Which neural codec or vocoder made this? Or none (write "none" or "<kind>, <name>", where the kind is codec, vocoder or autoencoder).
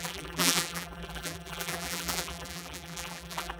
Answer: vocoder, BigVGAN v2